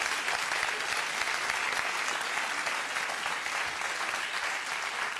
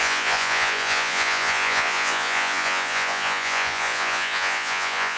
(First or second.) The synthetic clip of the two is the second